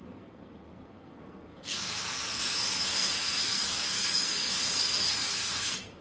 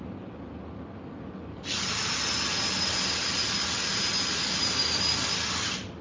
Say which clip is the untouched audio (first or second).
second